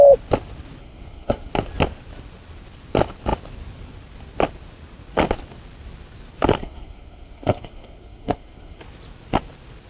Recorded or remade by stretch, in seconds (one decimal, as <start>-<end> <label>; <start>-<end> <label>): 0.0-0.8 recorded; 0.8-1.5 remade; 1.5-6.6 recorded; 6.6-8.8 remade; 8.8-9.9 recorded